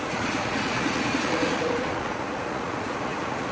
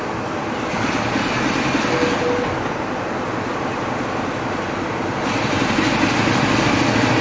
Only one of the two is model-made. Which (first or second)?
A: first